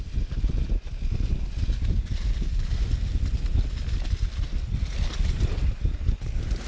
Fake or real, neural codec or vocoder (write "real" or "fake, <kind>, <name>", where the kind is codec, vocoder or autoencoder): real